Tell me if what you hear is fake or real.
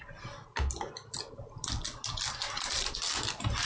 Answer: real